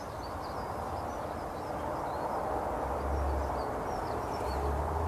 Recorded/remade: recorded